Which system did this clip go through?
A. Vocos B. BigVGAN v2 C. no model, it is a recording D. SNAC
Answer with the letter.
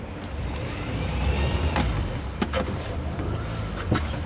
C